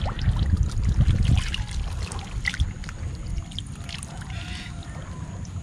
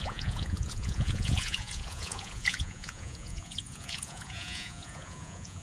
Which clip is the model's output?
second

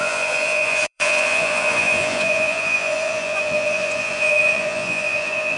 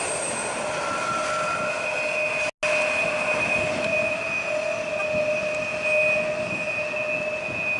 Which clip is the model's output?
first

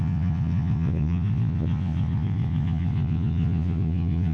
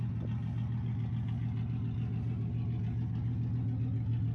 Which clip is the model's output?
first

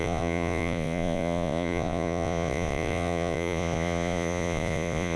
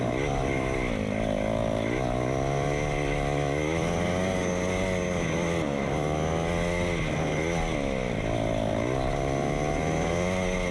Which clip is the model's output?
first